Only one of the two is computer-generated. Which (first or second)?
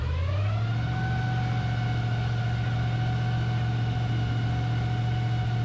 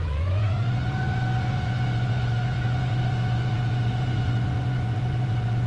second